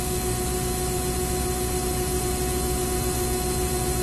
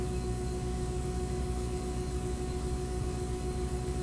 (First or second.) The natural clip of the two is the first